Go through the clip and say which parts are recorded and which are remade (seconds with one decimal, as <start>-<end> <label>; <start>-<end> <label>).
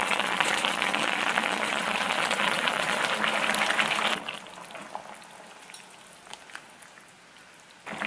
0.0-3.0 remade; 3.0-8.1 recorded